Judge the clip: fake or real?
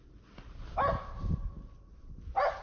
real